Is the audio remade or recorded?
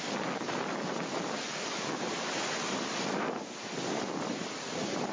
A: recorded